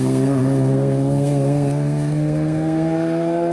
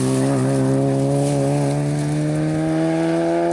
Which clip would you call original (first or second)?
second